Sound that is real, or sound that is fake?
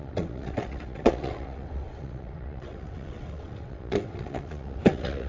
fake